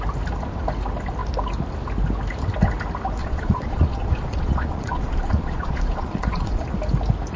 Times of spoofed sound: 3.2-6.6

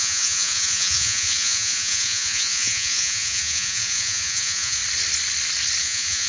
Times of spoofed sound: 0.0-4.8; 5.8-6.3

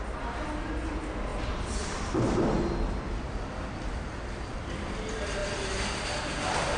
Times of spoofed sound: none

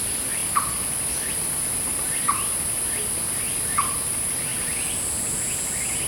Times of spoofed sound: none

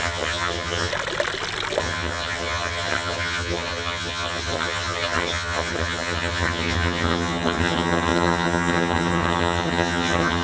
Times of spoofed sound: 0.0-0.9; 1.8-10.4

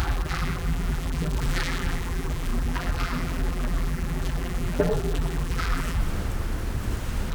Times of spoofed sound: 0.0-6.0

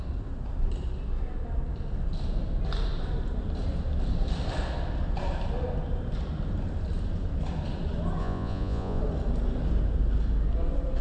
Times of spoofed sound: 8.2-9.0